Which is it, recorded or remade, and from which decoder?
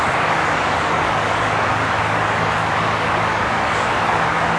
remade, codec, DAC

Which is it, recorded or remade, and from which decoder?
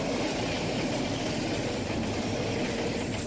recorded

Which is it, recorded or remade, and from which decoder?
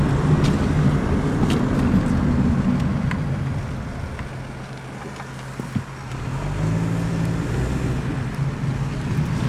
recorded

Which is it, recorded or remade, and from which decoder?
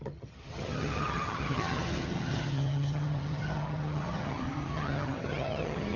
remade, vocoder, HiFi-GAN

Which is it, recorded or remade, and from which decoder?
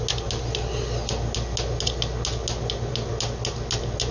recorded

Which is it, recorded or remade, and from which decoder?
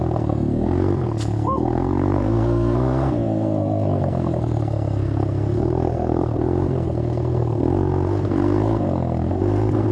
remade, codec, SNAC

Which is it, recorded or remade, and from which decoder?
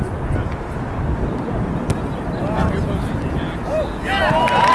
recorded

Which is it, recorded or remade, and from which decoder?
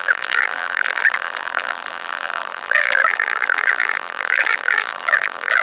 remade, vocoder, BigVGAN v2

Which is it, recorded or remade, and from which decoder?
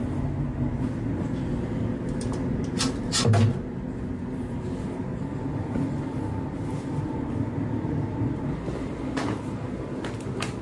recorded